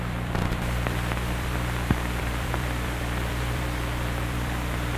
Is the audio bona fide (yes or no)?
no